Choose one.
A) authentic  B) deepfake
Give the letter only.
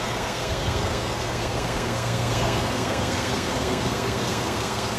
B